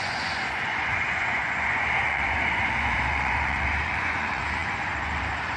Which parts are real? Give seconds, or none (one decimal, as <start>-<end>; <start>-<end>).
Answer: none